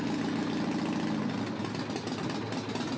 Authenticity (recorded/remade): recorded